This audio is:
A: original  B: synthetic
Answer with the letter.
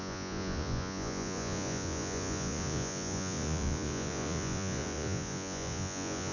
B